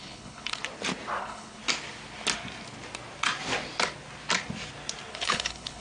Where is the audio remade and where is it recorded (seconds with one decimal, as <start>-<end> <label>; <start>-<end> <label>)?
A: 0.0-0.6 remade; 0.6-1.2 recorded; 1.2-1.6 remade; 1.6-5.1 recorded; 5.1-5.8 remade